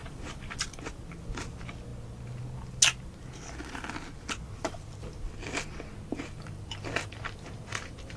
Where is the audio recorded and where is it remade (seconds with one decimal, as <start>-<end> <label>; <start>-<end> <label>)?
0.0-0.6 remade; 0.6-6.1 recorded; 6.1-8.2 remade